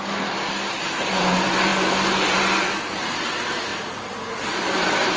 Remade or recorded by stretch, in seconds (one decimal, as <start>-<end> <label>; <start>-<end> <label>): 0.0-3.7 recorded; 3.7-5.2 remade